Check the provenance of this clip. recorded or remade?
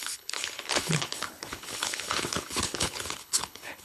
remade